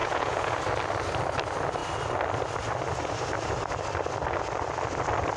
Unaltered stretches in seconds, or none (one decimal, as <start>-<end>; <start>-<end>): 0.6-5.4